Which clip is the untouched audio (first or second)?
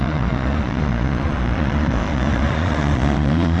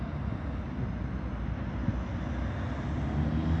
second